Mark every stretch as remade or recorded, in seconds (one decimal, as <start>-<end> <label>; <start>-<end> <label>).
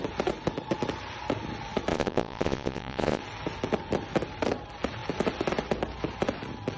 0.0-1.9 recorded; 1.9-3.2 remade; 3.2-6.8 recorded